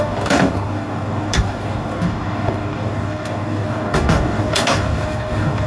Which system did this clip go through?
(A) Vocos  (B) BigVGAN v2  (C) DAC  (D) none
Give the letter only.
C